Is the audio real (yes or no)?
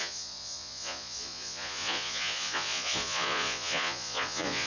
no